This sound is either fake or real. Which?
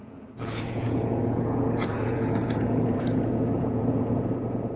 fake